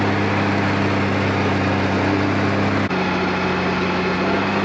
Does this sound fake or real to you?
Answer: real